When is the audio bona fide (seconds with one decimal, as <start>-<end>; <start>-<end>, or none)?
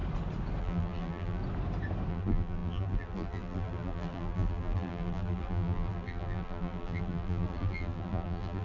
0.0-0.6; 1.4-2.1